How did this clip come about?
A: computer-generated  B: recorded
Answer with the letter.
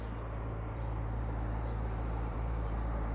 A